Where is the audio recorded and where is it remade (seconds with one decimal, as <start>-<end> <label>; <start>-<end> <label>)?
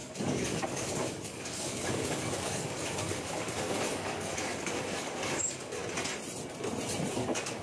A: 0.0-5.8 remade; 5.8-7.1 recorded; 7.1-7.6 remade